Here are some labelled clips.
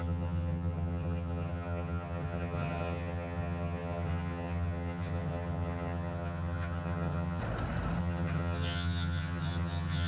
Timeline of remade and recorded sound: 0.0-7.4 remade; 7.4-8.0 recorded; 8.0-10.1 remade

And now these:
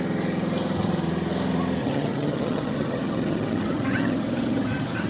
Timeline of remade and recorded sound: 0.0-1.8 recorded; 1.8-5.1 remade